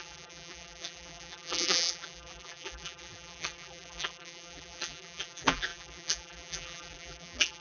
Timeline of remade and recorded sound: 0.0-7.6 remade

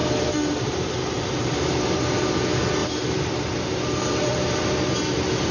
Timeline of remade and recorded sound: 0.0-2.3 remade; 2.3-2.8 recorded; 2.8-5.5 remade

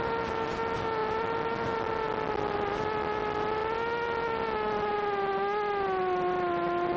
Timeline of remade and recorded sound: 0.0-7.0 recorded

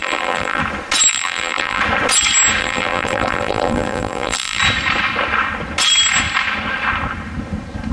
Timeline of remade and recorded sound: 0.0-0.6 remade; 0.6-1.1 recorded; 1.1-1.8 remade; 1.8-2.6 recorded; 2.6-4.6 remade; 4.6-7.9 recorded